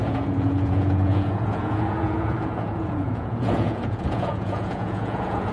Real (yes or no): no